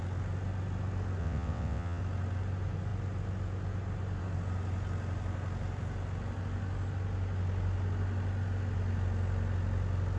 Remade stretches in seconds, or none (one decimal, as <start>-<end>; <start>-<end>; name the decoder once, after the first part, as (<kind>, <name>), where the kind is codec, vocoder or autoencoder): 1.2-2.0 (vocoder, WaveNeXt)

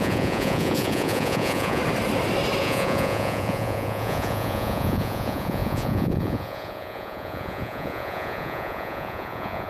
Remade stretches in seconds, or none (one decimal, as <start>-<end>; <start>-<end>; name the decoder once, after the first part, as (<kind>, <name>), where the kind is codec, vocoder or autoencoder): 0.0-1.8 (vocoder, Vocos); 2.6-9.7